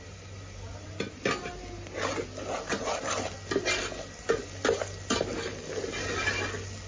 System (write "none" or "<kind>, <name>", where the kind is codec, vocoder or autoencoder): none